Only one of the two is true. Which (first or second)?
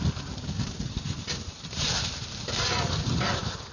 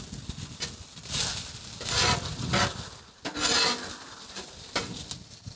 second